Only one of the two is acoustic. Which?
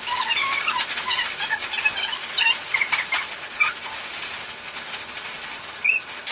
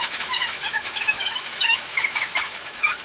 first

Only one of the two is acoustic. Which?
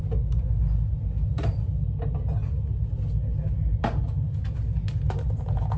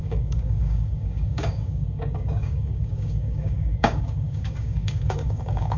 first